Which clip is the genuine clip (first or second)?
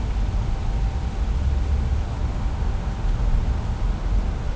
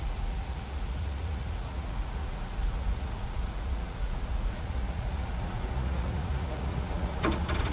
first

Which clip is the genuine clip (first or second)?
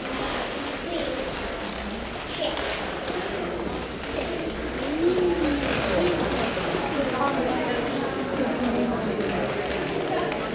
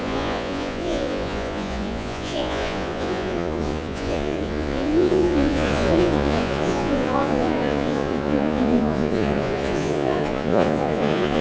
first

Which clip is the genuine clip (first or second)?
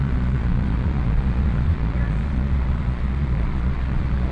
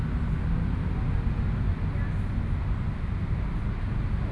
second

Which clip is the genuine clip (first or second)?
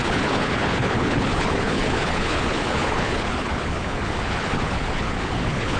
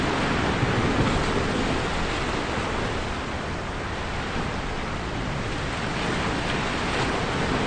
second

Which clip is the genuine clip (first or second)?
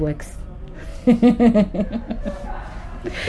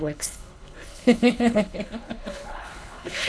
first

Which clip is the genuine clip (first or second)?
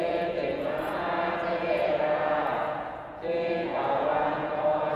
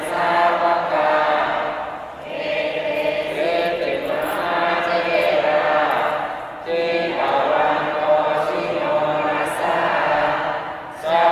second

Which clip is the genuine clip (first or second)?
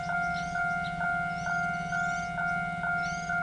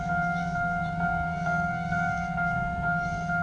first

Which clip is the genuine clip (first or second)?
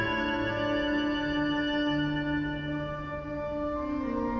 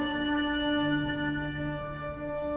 first